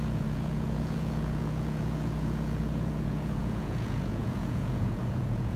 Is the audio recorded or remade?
remade